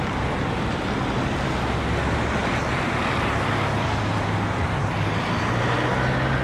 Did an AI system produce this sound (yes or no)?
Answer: no